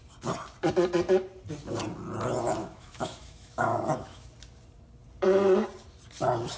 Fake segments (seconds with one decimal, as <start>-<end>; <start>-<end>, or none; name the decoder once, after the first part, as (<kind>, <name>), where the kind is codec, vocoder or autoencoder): 2.6-4.3 (autoencoder, DAC-VAE)